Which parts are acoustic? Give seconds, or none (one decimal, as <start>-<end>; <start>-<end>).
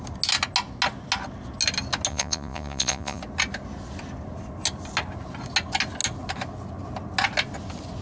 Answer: 0.0-2.1; 3.2-8.0